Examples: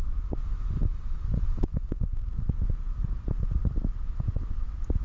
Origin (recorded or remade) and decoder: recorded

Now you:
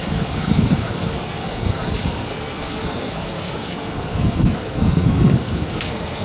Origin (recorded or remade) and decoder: remade, codec, SNAC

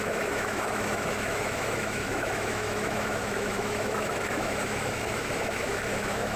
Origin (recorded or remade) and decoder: remade, autoencoder, DAC-VAE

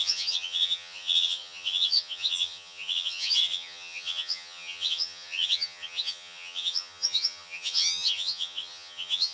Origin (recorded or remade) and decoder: remade, vocoder, HiFi-GAN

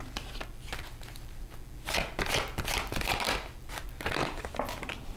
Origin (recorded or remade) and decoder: recorded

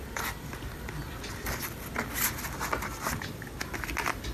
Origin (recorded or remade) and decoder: recorded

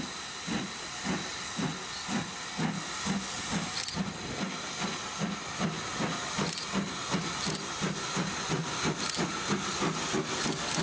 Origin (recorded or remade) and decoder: recorded